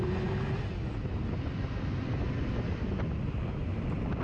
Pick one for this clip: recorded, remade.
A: recorded